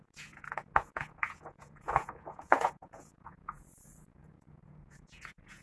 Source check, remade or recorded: remade